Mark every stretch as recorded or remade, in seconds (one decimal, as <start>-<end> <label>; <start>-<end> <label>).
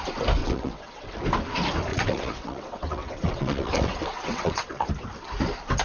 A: 0.0-0.4 recorded; 0.4-1.1 remade; 1.1-1.9 recorded; 1.9-4.9 remade; 4.9-5.8 recorded